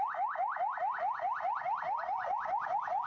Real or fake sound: real